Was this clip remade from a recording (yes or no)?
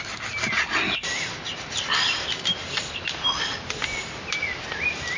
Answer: no